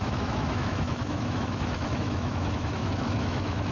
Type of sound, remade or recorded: remade